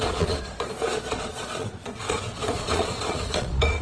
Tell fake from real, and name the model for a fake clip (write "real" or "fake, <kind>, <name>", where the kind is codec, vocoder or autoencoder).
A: fake, vocoder, Vocos